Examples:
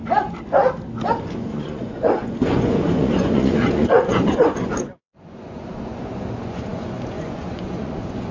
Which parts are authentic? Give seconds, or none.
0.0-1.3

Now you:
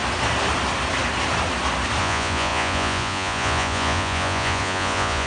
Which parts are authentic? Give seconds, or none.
0.0-2.0

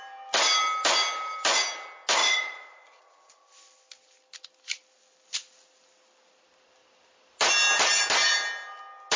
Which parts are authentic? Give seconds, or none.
0.0-2.2; 3.5-9.2

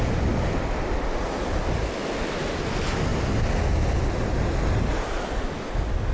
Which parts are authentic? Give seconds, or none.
0.0-6.1